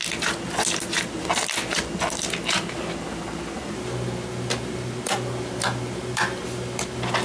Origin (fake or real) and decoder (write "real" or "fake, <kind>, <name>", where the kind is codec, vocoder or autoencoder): real